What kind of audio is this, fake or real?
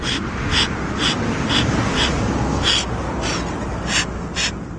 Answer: real